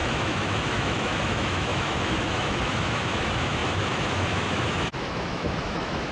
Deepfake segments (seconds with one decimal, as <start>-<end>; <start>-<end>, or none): 0.0-6.1